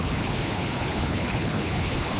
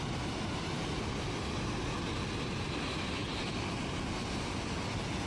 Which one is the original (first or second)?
second